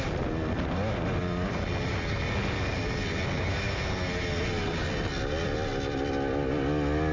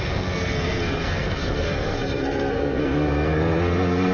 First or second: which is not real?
second